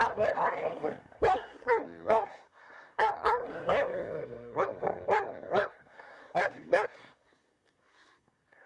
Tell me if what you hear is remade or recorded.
remade